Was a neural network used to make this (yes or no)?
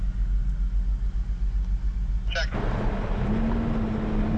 no